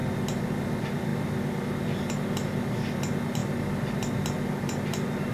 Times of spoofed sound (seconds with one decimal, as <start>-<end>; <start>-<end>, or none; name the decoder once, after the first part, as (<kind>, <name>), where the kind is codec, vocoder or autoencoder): none